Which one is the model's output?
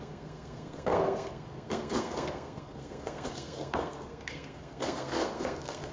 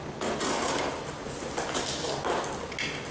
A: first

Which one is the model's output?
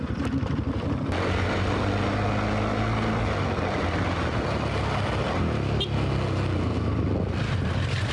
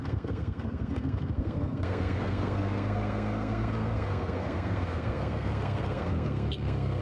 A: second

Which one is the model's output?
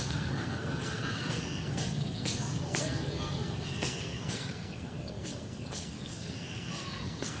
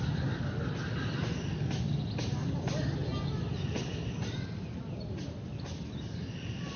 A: first